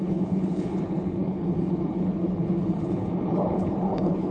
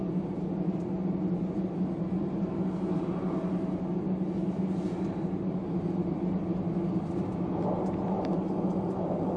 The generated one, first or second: first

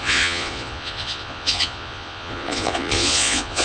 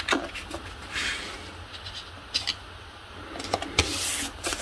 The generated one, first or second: first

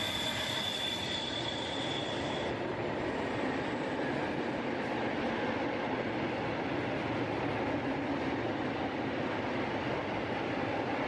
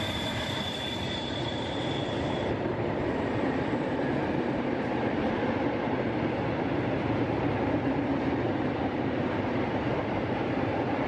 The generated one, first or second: second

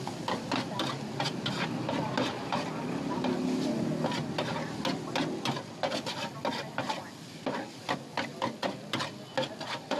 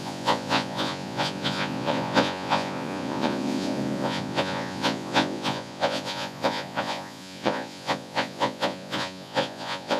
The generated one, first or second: second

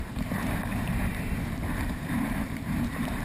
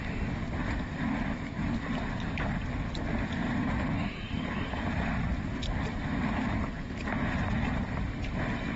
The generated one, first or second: first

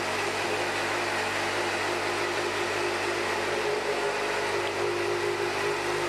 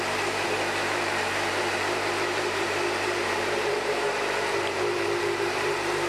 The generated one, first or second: second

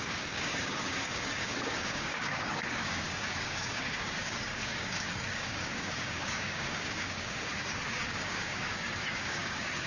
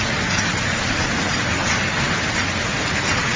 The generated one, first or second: first